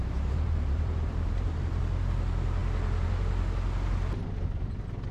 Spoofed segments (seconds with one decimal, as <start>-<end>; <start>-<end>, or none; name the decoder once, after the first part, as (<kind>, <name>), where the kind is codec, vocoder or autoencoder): 0.0-1.8 (vocoder, BigVGAN v2)